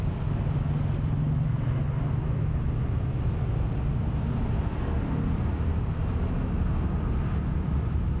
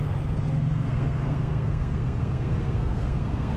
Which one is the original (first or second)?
first